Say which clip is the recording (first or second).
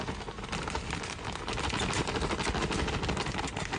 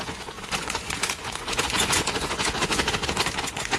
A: first